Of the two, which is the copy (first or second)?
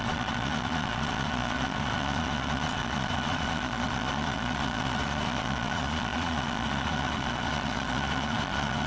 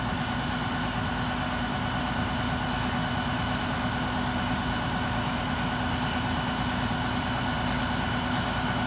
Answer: first